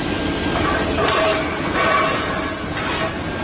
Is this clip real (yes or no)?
yes